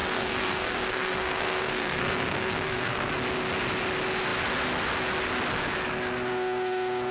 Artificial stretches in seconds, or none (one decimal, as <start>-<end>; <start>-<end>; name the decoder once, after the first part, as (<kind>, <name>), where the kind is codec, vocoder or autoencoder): 0.0-3.1 (codec, SNAC)